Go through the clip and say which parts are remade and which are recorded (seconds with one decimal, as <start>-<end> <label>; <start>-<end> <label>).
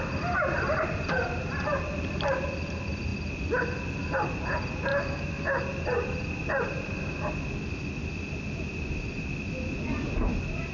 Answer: 0.0-4.9 recorded; 4.9-5.6 remade; 5.6-10.7 recorded